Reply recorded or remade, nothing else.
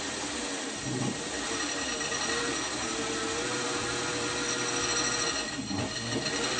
recorded